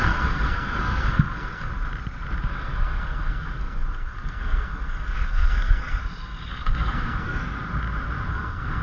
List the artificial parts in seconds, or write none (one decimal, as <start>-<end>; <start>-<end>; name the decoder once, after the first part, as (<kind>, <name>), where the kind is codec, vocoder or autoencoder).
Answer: 0.0-1.7 (codec, SNAC); 2.5-6.0; 6.5-7.4; 8.3-8.8